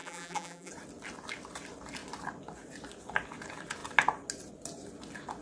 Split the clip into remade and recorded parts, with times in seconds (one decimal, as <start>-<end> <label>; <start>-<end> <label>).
0.0-0.7 remade; 0.7-5.4 recorded